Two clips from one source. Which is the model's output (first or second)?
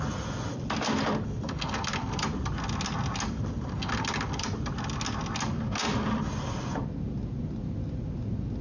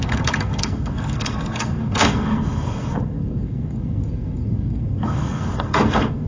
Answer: second